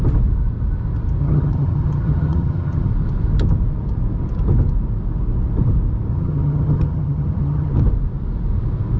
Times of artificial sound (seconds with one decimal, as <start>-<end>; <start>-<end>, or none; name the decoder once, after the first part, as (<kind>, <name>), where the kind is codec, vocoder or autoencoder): 1.2-2.9 (vocoder, HiFi-GAN); 6.1-7.7